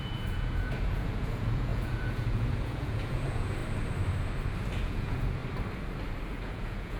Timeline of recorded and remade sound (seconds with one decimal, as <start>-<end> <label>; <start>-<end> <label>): 0.0-3.6 remade; 3.6-4.8 recorded; 4.8-5.4 remade; 5.4-6.3 recorded; 6.3-7.0 remade